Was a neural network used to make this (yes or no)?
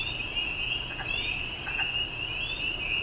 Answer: no